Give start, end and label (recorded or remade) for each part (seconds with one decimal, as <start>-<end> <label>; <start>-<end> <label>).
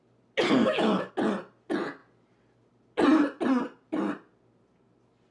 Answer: 0.0-0.6 recorded; 0.6-1.1 remade; 1.1-5.3 recorded